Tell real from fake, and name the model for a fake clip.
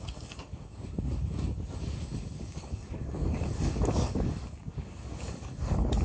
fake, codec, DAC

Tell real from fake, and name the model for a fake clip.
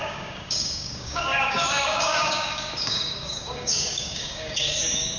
fake, codec, DAC